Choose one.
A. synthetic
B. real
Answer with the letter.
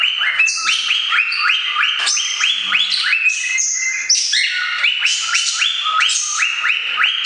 B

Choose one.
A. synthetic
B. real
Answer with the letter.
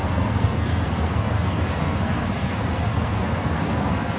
A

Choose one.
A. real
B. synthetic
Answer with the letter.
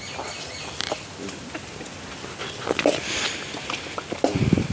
A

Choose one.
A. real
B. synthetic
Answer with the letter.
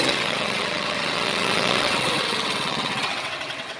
B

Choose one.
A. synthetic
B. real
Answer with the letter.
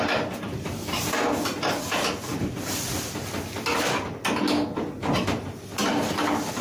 B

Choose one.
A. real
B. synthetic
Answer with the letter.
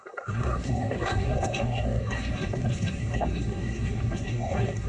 B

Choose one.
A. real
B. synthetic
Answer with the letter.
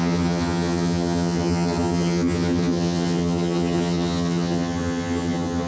B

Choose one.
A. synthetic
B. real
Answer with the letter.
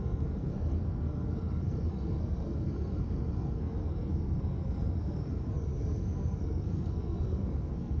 A